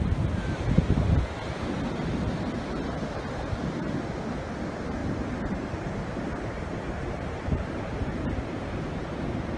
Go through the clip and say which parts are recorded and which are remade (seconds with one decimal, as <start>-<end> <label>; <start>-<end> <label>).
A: 0.0-5.0 recorded; 5.0-9.0 remade; 9.0-9.6 recorded